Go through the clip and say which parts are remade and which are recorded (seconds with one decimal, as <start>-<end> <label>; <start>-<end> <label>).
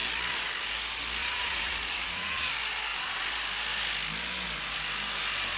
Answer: 0.0-1.2 recorded; 1.2-2.5 remade; 2.5-5.6 recorded